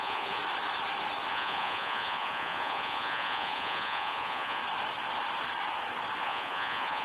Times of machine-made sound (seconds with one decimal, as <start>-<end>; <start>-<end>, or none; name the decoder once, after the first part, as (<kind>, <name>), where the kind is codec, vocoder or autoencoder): 0.0-0.4 (vocoder, Vocos); 1.3-4.6; 6.2-7.0